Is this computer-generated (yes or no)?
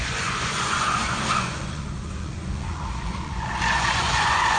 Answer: yes